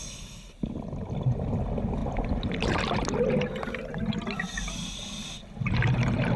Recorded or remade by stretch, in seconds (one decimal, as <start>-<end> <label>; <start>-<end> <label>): 0.0-6.4 recorded